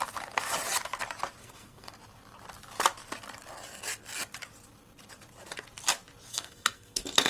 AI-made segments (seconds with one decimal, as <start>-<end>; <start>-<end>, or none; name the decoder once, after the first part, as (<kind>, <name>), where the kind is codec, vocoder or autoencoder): 1.4-1.9 (codec, SNAC); 6.3-7.3